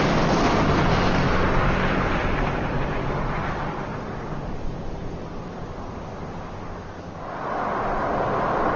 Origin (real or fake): real